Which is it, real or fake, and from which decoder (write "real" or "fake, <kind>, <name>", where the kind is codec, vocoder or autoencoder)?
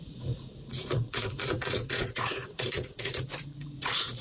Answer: fake, vocoder, Vocos